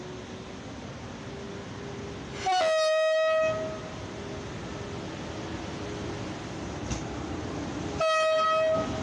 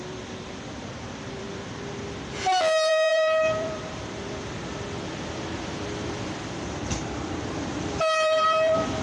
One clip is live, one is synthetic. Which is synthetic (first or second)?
second